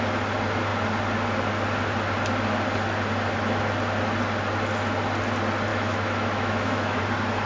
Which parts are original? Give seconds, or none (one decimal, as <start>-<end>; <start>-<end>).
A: 0.0-5.7; 7.0-7.5